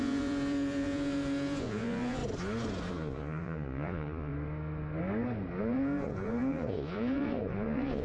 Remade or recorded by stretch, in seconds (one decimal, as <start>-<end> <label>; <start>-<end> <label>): 0.0-2.2 remade; 2.2-2.9 recorded; 2.9-4.3 remade; 4.3-5.6 recorded; 5.6-8.0 remade